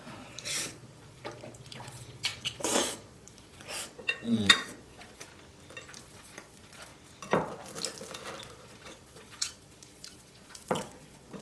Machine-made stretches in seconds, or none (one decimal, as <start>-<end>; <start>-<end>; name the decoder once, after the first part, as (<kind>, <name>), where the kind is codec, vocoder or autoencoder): 0.0-5.3 (vocoder, Vocos); 6.0-6.9; 8.4-11.4